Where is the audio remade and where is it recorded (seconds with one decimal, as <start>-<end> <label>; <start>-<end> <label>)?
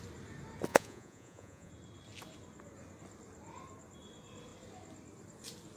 0.0-0.7 recorded; 0.7-1.7 remade; 1.7-5.8 recorded